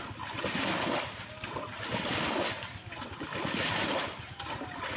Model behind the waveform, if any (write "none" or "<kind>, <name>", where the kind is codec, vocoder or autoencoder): none